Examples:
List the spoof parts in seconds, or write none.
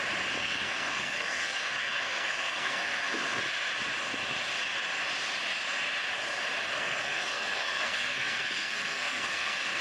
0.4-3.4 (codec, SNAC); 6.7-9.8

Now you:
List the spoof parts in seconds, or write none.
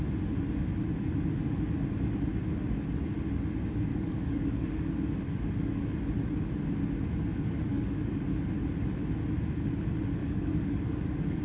3.9-4.9 (codec, DAC); 7.3-8.2; 10.2-11.4